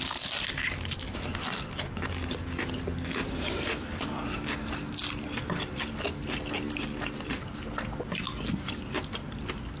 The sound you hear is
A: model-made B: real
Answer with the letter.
B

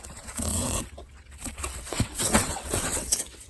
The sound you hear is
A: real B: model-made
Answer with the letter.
B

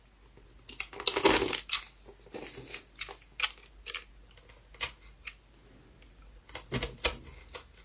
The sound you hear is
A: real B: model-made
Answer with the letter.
A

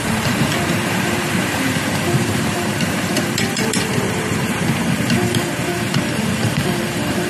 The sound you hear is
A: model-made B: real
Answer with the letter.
A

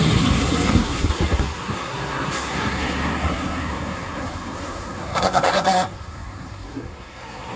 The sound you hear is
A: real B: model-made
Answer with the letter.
B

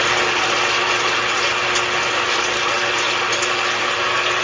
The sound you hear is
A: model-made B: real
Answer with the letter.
B